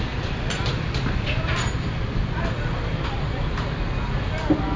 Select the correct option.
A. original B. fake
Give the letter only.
A